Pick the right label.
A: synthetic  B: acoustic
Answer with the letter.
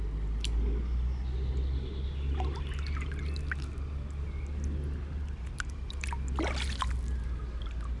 B